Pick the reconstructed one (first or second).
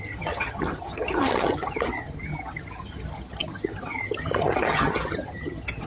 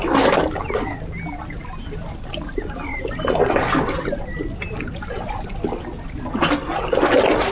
first